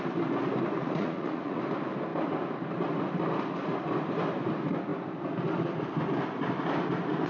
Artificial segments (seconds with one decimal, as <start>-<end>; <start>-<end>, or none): 0.8-1.6